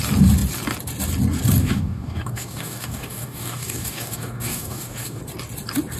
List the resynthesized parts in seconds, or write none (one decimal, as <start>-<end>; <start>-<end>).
1.6-5.2